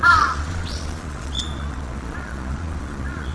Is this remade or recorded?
remade